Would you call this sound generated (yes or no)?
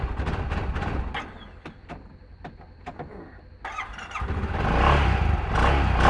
no